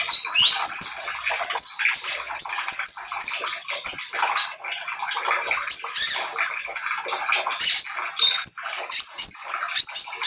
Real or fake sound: real